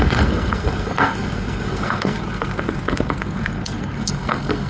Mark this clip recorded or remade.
remade